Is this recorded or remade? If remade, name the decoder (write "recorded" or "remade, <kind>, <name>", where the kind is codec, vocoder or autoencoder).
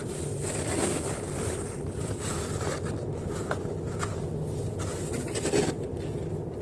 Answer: recorded